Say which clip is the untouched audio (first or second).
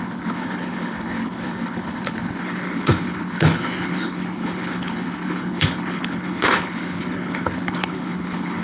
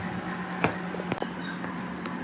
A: second